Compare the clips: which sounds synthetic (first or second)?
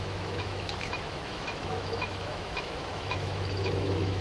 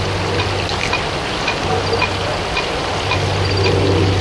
first